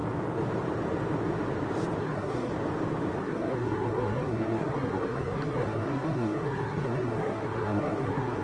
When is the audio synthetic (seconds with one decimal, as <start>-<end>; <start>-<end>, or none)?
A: 2.0-2.5; 3.2-8.4